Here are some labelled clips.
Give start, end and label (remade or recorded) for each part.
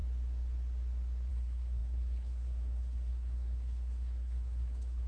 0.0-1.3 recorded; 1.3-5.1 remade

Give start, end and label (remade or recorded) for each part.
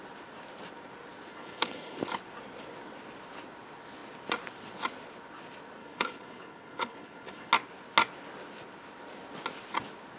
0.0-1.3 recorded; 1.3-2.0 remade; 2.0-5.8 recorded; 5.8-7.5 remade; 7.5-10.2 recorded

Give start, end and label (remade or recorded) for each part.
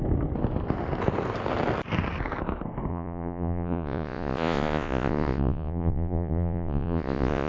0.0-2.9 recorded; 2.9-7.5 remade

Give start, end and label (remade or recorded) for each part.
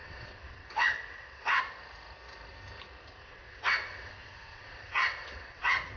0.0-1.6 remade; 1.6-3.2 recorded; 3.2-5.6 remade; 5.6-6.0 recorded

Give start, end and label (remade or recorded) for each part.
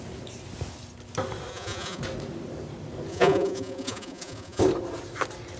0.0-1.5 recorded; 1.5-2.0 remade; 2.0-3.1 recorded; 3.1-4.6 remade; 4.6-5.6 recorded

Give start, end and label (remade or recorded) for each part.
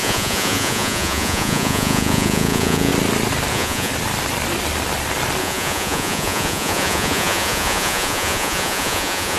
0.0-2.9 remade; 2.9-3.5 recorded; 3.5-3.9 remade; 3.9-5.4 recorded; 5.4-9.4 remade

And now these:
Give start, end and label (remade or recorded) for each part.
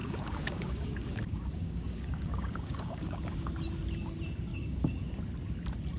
0.0-3.5 remade; 3.5-4.5 recorded; 4.5-5.1 remade; 5.1-6.0 recorded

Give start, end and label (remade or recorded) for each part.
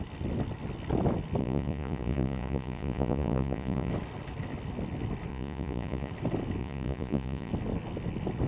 0.0-1.4 recorded; 1.4-3.9 remade; 3.9-5.3 recorded; 5.3-6.1 remade; 6.1-6.6 recorded; 6.6-7.5 remade; 7.5-8.5 recorded